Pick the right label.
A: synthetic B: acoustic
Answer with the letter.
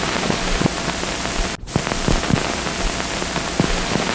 B